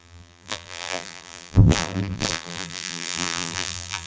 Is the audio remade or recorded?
remade